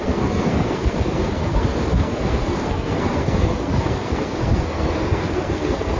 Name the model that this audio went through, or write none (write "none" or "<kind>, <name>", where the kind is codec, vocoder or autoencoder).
codec, SNAC